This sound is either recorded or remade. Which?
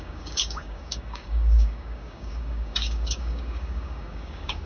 remade